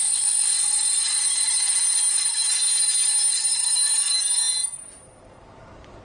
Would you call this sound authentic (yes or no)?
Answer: yes